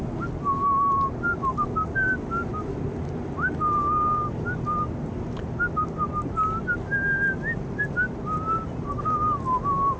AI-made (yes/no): no